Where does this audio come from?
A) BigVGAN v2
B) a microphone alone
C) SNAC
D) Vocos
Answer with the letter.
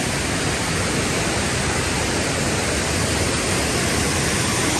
B